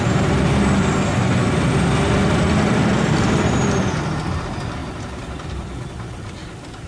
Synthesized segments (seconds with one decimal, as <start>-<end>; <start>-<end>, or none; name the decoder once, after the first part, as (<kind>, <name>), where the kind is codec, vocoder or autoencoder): 4.8-5.9 (vocoder, BigVGAN v2)